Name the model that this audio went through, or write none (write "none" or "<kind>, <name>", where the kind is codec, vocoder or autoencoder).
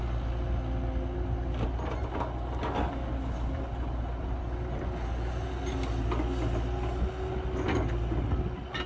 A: none